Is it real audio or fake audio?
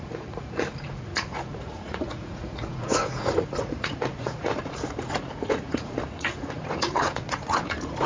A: fake